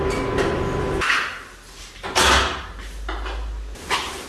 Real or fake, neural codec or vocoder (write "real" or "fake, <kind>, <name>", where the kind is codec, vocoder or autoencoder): real